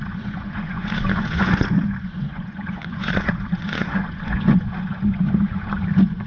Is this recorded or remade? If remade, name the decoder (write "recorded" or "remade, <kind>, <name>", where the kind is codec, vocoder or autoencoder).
remade, vocoder, Vocos